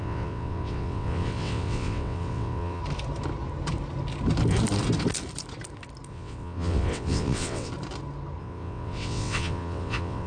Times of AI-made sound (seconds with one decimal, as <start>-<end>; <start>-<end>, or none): 0.0-2.8; 6.1-7.7; 8.4-10.3